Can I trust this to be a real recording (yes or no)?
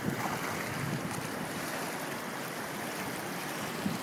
yes